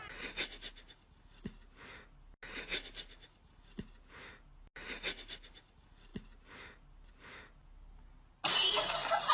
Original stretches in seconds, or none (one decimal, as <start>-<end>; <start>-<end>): 0.0-9.3